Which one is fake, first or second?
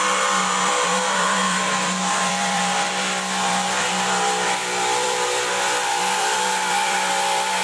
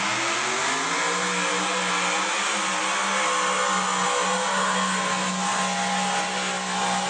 first